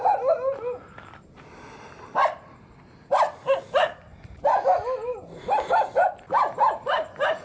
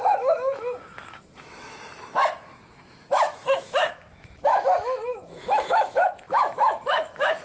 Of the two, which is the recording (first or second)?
first